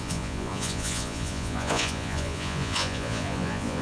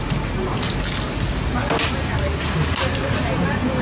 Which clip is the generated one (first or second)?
first